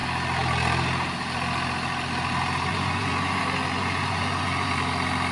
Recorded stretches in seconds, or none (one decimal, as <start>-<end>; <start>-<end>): 0.0-2.7; 3.4-3.8; 4.7-5.3